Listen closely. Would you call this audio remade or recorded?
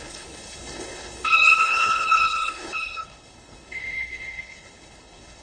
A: remade